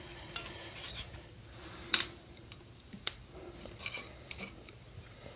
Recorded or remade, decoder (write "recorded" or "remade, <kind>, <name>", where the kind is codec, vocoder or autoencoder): remade, vocoder, BigVGAN v2